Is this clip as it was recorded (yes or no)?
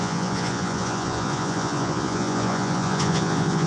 no